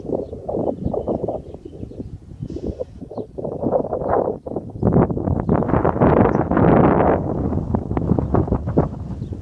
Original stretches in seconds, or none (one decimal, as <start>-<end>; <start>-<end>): 0.0-9.4